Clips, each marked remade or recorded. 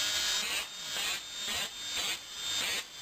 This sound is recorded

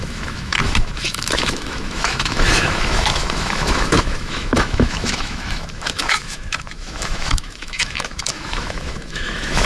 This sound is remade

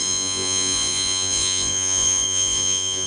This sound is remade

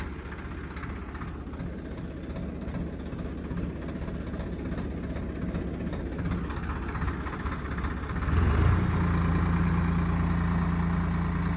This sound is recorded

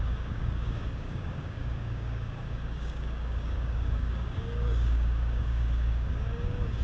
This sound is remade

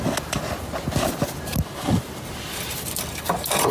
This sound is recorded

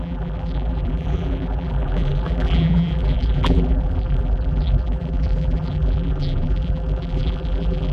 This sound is remade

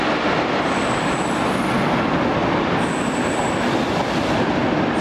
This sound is recorded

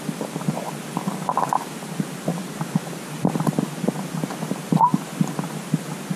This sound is recorded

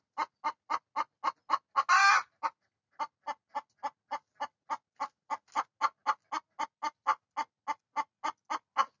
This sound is recorded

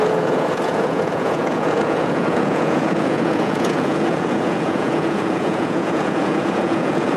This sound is remade